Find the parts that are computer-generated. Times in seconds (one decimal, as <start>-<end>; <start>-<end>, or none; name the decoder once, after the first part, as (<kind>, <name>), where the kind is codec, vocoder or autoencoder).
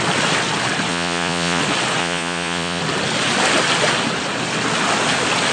0.9-1.6 (vocoder, Vocos); 2.0-2.8